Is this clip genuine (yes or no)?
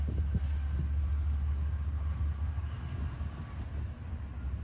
yes